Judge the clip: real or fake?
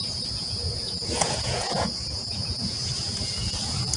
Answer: fake